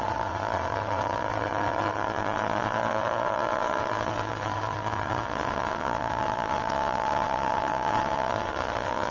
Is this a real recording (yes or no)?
no